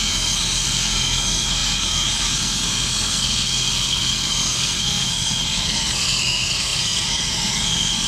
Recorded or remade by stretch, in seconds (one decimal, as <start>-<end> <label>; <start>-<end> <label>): 0.0-8.1 remade